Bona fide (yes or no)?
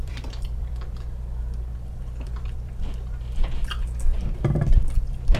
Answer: no